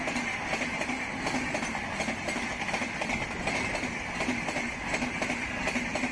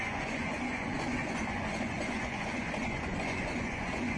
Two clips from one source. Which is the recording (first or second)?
first